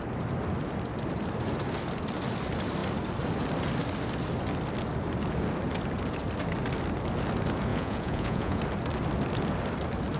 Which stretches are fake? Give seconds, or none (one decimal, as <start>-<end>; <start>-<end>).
7.7-8.6